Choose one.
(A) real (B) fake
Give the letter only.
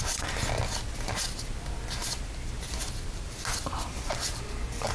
A